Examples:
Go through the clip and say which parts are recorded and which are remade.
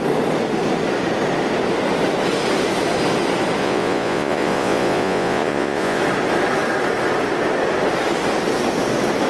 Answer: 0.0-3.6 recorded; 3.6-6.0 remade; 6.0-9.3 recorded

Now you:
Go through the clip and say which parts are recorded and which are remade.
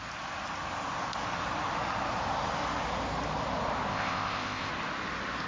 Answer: 0.0-3.9 recorded; 3.9-4.7 remade; 4.7-5.5 recorded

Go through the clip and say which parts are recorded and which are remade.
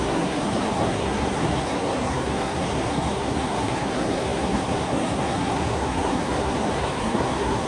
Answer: 0.0-7.7 remade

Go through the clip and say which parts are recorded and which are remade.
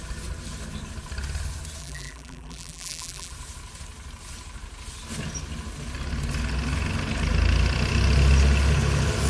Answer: 0.0-1.8 recorded; 1.8-3.3 remade; 3.3-9.3 recorded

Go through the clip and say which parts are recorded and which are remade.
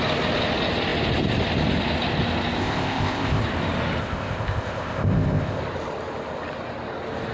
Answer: 0.0-2.6 recorded; 2.6-3.4 remade; 3.4-4.0 recorded; 4.0-5.6 remade; 5.6-7.3 recorded